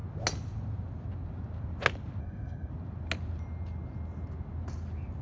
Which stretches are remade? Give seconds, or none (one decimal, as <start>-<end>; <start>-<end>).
2.2-2.7